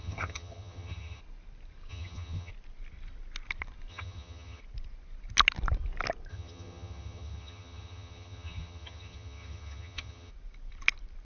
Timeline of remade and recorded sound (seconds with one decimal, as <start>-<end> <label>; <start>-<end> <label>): 0.0-1.2 remade; 1.2-1.9 recorded; 1.9-2.5 remade; 2.5-3.9 recorded; 3.9-4.6 remade; 4.6-6.3 recorded; 6.3-10.3 remade; 10.3-11.2 recorded

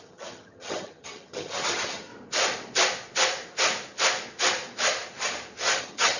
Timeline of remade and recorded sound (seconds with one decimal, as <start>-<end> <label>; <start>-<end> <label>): 0.0-2.1 remade; 2.1-5.8 recorded; 5.8-6.2 remade